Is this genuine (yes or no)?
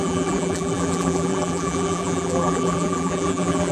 no